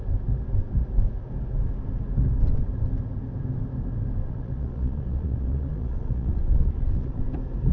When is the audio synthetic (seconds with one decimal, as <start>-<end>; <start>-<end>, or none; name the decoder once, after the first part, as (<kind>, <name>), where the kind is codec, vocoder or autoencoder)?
4.2-7.2 (vocoder, Vocos)

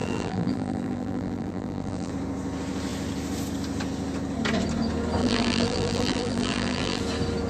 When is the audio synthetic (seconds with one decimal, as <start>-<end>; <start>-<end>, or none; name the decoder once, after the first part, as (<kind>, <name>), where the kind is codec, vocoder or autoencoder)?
0.0-2.1 (vocoder, BigVGAN v2); 5.2-7.0

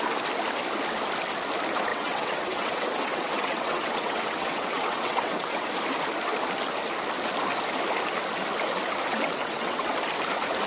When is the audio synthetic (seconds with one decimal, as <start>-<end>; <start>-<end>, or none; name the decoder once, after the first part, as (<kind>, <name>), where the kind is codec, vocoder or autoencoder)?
1.9-5.7 (vocoder, WaveNeXt); 9.1-9.9